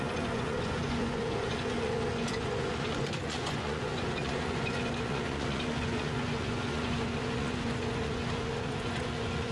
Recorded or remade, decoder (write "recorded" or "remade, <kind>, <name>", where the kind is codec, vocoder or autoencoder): remade, vocoder, Vocos